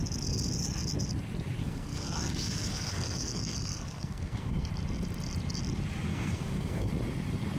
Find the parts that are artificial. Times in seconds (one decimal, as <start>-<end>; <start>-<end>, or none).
1.6-4.7; 6.1-6.9